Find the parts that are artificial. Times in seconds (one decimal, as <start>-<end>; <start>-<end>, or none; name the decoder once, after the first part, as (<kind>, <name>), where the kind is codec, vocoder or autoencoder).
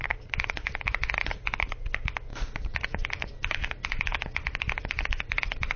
2.3-5.8 (vocoder, BigVGAN v2)